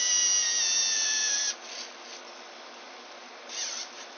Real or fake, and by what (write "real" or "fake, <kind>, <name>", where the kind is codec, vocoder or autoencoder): real